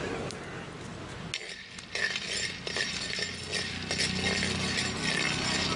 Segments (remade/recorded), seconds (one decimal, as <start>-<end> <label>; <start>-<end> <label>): 0.0-5.8 recorded

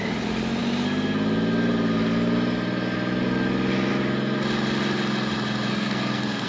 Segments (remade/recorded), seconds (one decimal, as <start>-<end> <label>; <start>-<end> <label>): 0.0-5.7 recorded; 5.7-6.5 remade

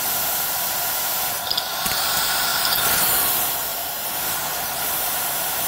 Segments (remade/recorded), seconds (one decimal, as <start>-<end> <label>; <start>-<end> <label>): 0.0-3.7 recorded; 3.7-5.7 remade

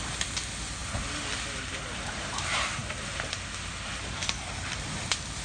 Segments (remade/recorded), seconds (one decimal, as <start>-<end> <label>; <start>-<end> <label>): 0.0-5.4 recorded

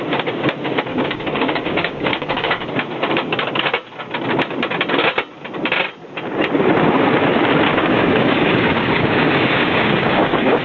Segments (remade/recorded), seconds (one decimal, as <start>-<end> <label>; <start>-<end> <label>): 0.0-0.9 recorded; 0.9-2.7 remade; 2.7-7.7 recorded; 7.7-10.6 remade

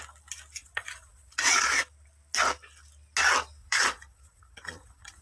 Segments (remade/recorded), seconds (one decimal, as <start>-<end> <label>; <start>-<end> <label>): 0.0-0.6 recorded; 0.6-1.8 remade; 1.8-3.6 recorded; 3.6-5.2 remade